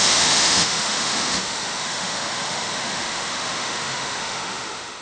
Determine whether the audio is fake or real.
fake